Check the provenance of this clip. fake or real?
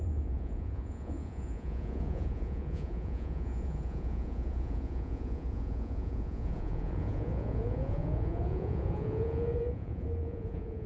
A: fake